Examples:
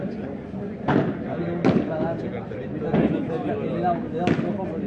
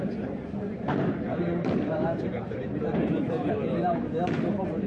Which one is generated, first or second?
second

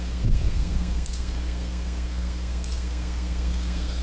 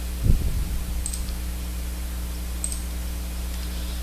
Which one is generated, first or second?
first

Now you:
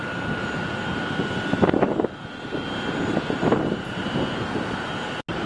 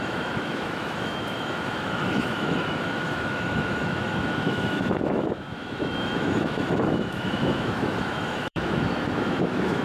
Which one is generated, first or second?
second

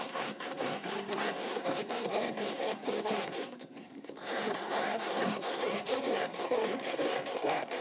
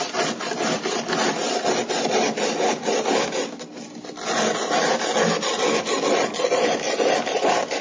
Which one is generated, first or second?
first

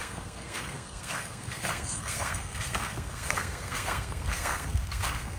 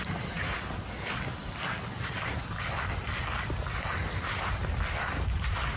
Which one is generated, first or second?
first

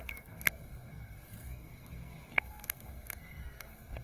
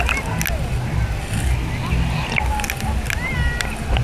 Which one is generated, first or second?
first